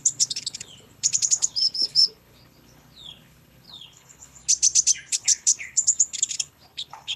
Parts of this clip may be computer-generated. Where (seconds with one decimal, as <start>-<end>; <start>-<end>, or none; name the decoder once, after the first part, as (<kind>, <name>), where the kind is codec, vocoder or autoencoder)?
0.0-4.4 (codec, HILCodec); 5.1-7.2